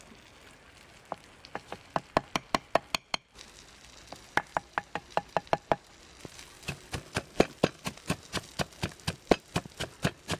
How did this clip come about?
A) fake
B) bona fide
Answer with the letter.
B